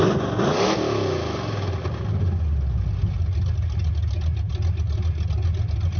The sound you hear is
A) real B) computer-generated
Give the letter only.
A